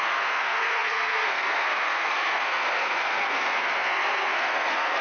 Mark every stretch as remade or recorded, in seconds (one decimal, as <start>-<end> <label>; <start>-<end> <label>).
0.0-5.0 remade